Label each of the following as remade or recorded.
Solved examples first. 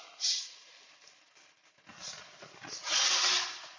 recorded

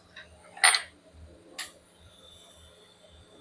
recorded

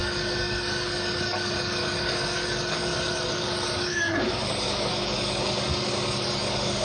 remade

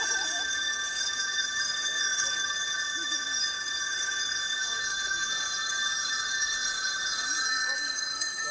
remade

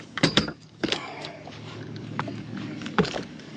remade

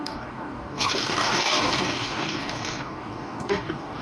remade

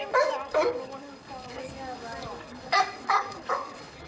remade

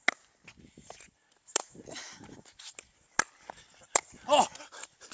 recorded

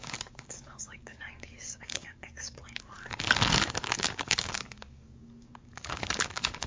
remade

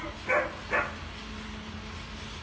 recorded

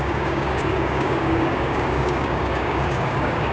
remade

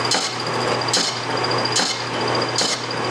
recorded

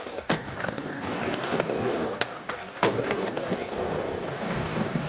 remade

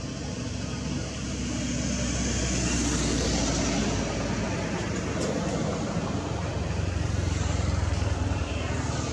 recorded